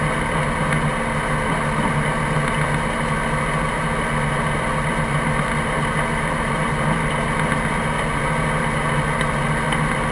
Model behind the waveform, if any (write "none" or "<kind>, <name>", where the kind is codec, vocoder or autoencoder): none